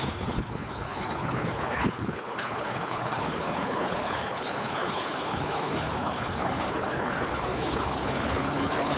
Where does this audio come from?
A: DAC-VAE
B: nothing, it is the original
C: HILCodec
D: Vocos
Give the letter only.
C